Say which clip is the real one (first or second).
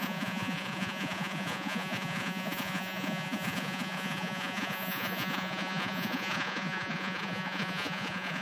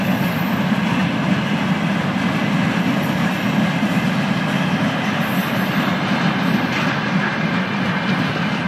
second